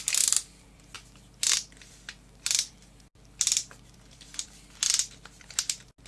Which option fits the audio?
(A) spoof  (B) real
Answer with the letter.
B